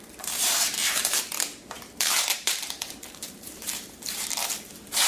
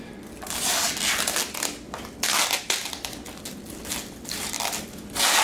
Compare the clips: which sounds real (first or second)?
second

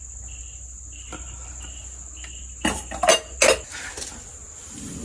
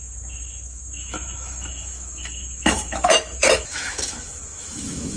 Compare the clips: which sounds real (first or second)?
first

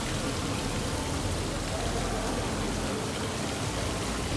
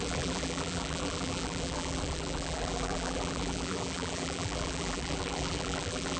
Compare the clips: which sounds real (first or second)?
first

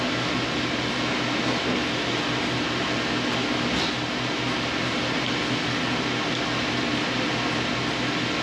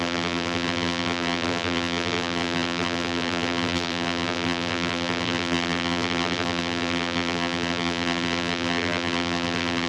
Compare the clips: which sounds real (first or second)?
first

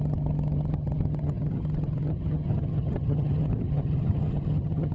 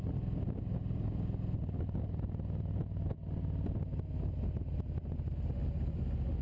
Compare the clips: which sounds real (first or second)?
second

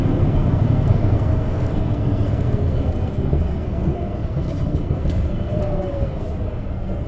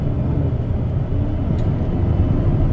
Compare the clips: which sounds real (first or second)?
second